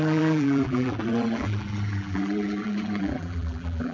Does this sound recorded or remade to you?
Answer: remade